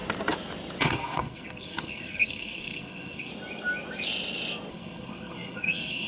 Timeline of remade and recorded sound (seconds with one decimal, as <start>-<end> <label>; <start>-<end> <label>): 0.0-0.8 recorded; 0.8-3.3 remade; 3.3-4.7 recorded; 4.7-6.1 remade